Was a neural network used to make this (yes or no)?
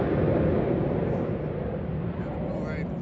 no